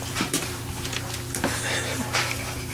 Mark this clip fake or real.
fake